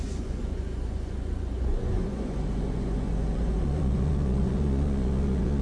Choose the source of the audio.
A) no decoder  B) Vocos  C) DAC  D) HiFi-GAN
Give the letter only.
B